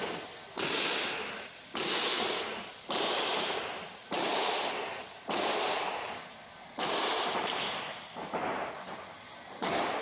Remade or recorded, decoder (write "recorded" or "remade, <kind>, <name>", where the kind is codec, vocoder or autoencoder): recorded